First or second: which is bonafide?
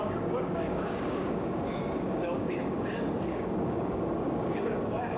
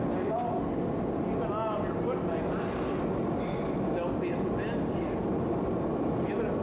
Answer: second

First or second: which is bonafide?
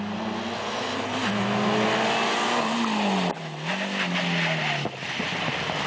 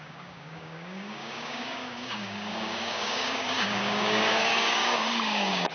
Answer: first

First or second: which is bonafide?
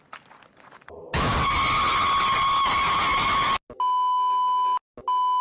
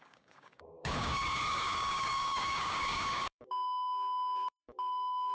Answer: first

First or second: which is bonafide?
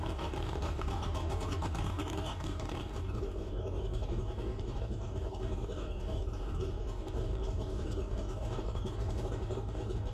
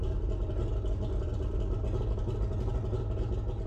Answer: second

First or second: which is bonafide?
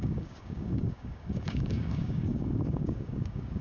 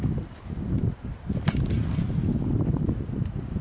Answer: second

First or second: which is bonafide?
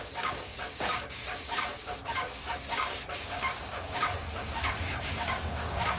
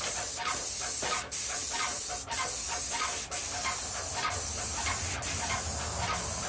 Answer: second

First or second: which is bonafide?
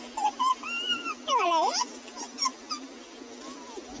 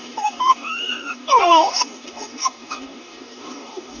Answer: first